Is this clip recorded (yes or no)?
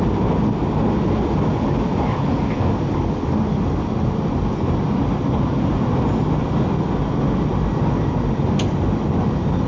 yes